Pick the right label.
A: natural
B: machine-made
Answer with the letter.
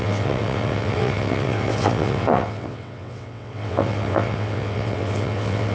B